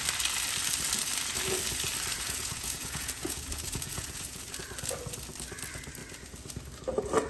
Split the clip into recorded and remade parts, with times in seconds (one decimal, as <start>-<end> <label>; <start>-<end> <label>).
0.0-2.1 recorded; 2.1-4.5 remade; 4.5-7.3 recorded